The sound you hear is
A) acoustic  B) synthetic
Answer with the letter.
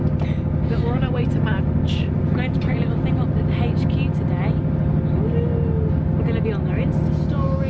A